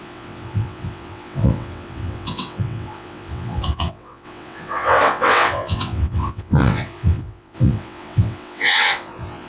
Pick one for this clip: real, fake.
fake